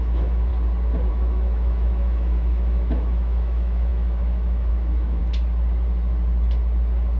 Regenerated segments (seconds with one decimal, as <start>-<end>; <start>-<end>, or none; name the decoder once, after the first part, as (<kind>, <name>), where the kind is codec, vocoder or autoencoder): 0.0-0.5 (autoencoder, DAC-VAE); 1.1-5.2